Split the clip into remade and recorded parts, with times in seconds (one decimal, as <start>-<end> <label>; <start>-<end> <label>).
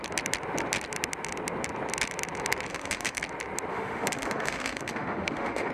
0.0-2.7 recorded; 2.7-3.2 remade; 3.2-3.7 recorded; 3.7-5.7 remade